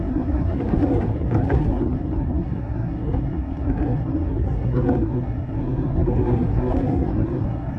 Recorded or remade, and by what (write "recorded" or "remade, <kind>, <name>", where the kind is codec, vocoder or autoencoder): remade, codec, SNAC